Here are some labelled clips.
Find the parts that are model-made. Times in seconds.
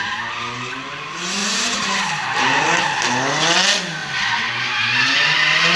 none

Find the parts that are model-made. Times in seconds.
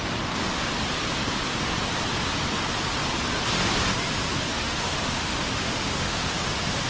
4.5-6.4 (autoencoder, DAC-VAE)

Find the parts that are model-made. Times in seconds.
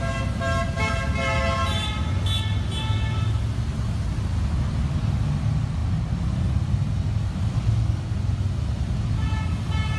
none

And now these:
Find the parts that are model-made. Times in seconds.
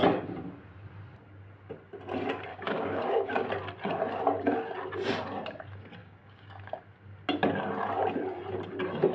2.5-3.3 (codec, DAC); 6.0-6.8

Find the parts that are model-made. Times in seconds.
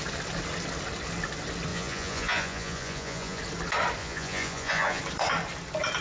1.7-3.4 (vocoder, Vocos); 4.0-5.0